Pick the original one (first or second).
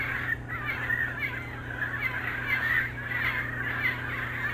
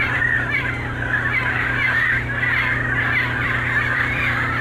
first